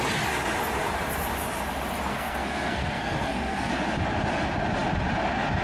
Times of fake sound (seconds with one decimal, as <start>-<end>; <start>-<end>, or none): 2.1-3.7